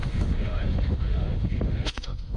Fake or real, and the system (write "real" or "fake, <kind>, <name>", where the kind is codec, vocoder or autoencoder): fake, autoencoder, DAC-VAE